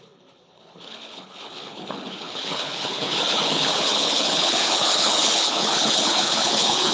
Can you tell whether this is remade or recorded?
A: remade